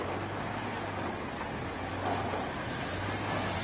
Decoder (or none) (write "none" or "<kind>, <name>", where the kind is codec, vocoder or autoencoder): none